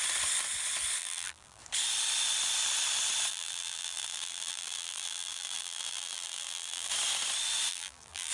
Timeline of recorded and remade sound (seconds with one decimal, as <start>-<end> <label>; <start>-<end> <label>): 0.0-1.0 recorded; 1.0-1.6 remade; 1.6-3.3 recorded; 3.3-6.9 remade; 6.9-7.7 recorded; 7.7-8.3 remade